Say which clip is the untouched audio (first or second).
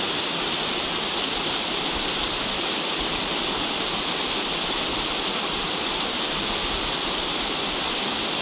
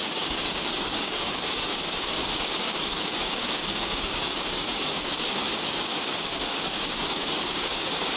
first